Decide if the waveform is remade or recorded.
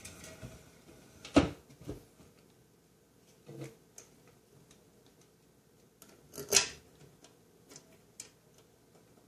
recorded